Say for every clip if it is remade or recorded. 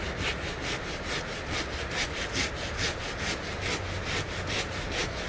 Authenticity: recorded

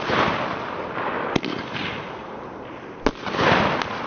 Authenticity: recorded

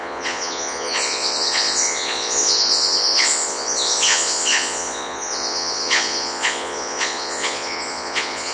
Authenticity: remade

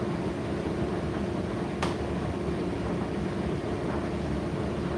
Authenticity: recorded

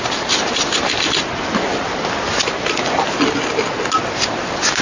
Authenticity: recorded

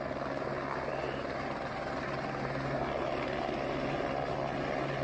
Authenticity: recorded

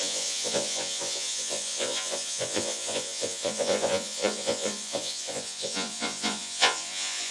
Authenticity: remade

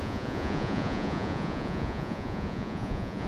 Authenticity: remade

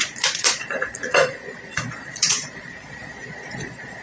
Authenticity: remade